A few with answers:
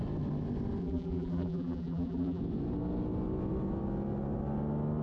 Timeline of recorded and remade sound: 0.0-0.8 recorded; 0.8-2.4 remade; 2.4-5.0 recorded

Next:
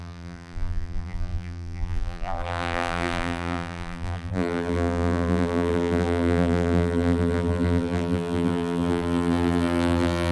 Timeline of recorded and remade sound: 0.0-10.3 remade